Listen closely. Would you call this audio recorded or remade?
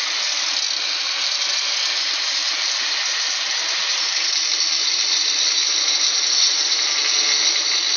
recorded